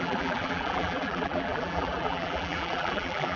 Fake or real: fake